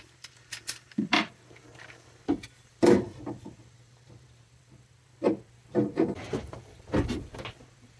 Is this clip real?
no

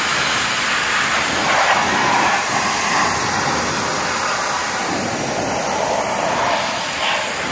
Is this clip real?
no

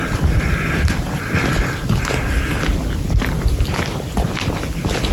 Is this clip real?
yes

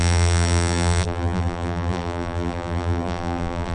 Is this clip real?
no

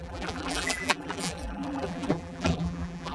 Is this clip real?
no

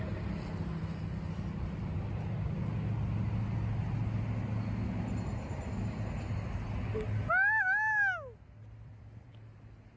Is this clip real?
yes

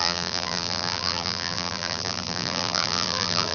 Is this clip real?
no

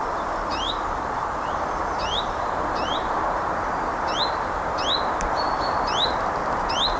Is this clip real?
no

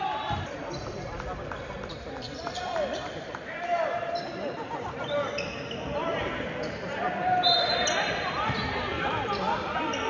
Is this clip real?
no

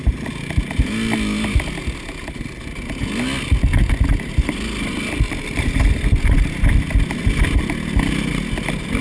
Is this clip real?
yes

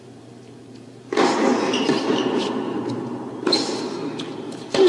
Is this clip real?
no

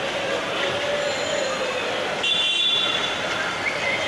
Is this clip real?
yes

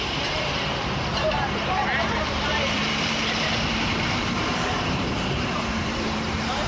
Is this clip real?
no